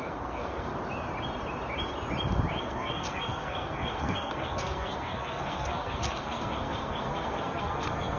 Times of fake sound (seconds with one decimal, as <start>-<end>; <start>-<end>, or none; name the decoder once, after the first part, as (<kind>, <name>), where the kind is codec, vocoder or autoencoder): 0.0-0.7 (codec, SNAC); 2.6-8.2